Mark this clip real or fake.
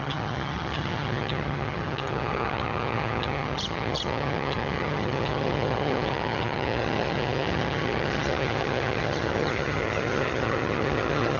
fake